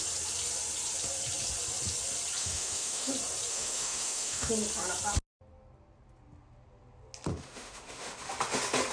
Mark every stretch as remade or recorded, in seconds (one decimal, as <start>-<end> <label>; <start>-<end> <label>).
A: 0.0-2.4 recorded; 2.4-3.1 remade; 3.1-3.5 recorded; 3.5-4.5 remade; 4.5-7.3 recorded; 7.3-8.3 remade; 8.3-8.9 recorded